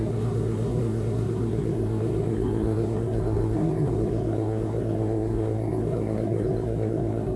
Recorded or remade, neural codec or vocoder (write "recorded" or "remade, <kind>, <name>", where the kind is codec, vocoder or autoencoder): remade, codec, SNAC